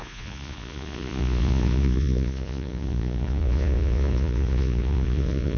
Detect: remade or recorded remade